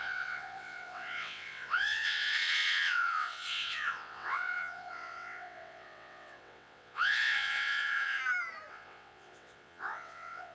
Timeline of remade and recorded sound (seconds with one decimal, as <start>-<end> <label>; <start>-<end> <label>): 0.0-8.2 remade; 8.2-8.7 recorded; 8.7-10.5 remade

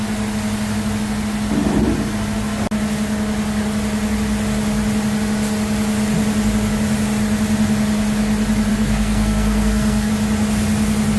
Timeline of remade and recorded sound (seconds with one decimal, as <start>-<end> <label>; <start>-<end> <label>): 0.0-8.7 recorded; 8.7-10.1 remade; 10.1-11.2 recorded

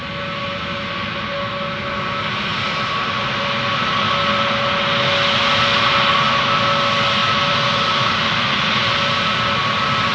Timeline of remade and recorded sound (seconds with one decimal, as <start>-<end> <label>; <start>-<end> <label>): 0.0-7.2 recorded; 7.2-8.8 remade; 8.8-10.1 recorded